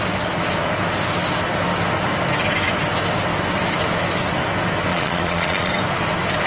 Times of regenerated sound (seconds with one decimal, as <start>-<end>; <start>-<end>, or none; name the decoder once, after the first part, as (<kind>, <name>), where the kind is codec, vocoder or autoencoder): 4.9-5.7 (vocoder, Vocos)